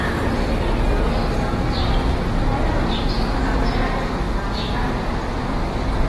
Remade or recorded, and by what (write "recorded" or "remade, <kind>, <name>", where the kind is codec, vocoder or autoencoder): recorded